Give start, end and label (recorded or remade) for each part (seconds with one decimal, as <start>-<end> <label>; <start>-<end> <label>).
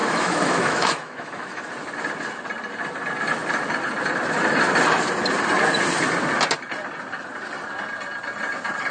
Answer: 0.0-1.7 remade; 1.7-8.9 recorded